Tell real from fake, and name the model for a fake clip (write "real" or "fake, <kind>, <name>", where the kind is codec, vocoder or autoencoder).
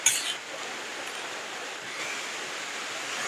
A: real